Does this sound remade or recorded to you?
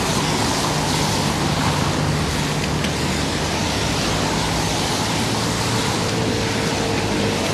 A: recorded